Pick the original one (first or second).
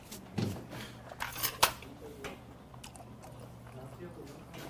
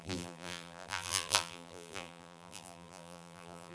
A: first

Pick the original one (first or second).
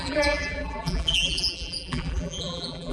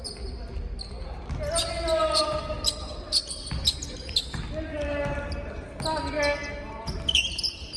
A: second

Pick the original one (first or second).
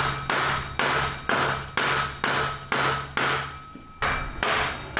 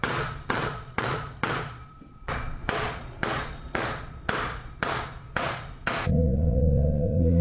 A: first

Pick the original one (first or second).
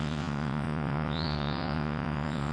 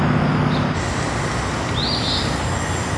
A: second